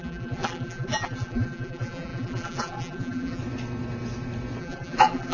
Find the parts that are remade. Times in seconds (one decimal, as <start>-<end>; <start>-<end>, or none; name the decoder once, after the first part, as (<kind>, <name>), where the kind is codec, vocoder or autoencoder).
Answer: 0.0-3.4 (vocoder, BigVGAN v2); 4.6-5.3